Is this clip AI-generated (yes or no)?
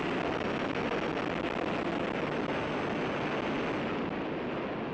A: no